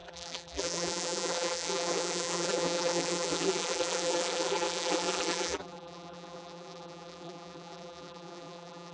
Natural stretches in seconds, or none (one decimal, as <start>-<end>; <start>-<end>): none